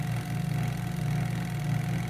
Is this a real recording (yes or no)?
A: yes